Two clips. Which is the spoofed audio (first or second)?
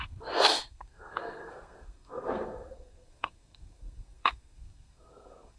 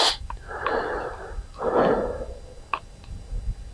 first